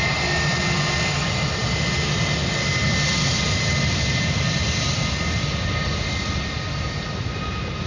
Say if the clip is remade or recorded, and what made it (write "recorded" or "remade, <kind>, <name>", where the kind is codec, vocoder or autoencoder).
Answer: recorded